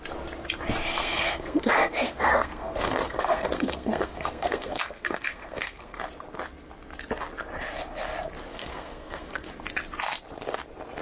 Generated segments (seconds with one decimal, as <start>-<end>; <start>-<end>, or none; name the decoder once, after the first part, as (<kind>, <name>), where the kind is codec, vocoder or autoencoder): 1.0-6.0 (codec, SNAC); 8.5-9.5